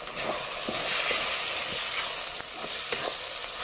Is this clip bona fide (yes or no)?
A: yes